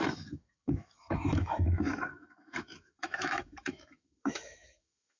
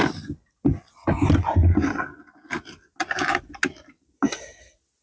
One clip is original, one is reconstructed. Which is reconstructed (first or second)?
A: first